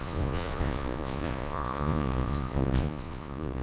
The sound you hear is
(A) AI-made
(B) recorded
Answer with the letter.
A